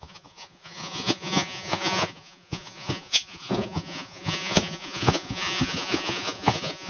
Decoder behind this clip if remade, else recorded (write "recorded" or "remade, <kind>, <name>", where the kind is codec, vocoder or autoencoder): remade, vocoder, Vocos